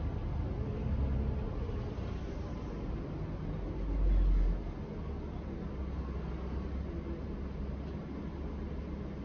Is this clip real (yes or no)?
yes